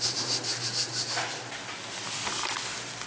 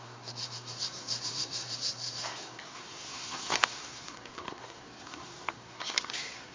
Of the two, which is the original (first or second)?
first